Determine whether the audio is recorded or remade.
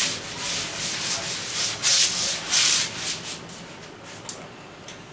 recorded